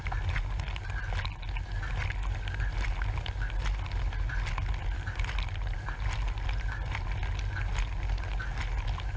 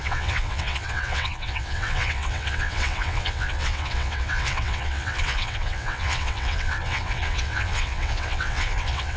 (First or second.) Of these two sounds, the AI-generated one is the second